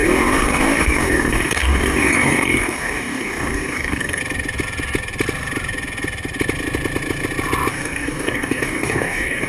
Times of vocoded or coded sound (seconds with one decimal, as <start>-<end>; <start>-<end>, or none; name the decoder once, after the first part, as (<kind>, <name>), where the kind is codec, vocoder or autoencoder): 0.0-4.2 (codec, DAC); 7.7-9.5